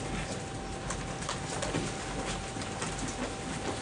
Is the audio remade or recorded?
recorded